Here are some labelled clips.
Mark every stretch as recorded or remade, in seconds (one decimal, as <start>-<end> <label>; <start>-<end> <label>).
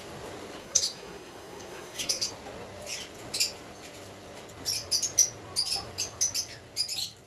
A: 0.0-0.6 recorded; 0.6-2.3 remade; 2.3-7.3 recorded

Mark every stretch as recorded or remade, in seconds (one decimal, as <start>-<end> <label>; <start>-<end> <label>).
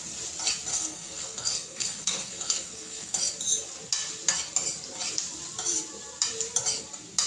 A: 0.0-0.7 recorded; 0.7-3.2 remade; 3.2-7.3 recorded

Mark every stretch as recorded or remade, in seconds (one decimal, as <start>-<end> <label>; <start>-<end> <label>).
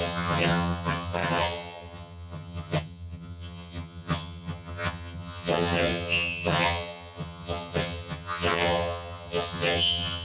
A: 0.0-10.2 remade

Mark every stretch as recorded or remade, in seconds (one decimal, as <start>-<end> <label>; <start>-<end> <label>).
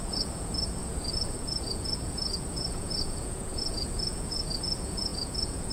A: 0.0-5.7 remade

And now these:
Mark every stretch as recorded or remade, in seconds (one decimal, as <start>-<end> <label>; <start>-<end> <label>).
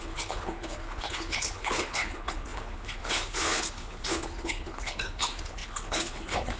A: 0.0-6.6 remade